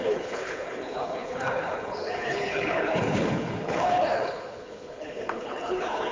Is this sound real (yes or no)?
no